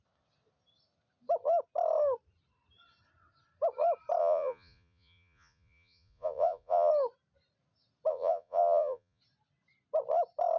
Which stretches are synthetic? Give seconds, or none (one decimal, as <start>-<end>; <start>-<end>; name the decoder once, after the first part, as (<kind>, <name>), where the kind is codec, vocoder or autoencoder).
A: 4.2-6.9 (vocoder, Vocos); 8.1-9.2